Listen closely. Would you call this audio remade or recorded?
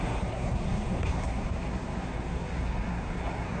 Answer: remade